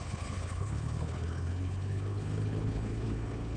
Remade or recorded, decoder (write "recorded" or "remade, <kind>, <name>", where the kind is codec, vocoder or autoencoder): remade, codec, HILCodec